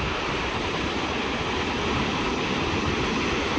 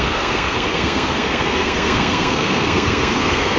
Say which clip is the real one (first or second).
first